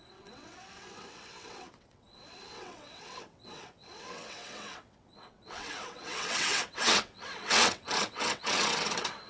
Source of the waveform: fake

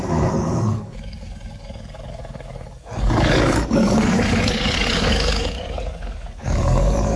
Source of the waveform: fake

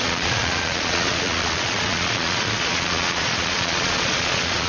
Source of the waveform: fake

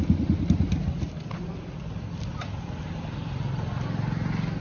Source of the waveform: real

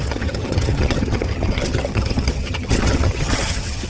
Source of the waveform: fake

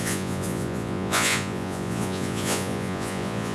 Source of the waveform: fake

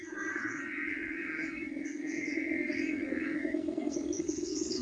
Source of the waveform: fake